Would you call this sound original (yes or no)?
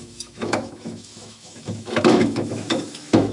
no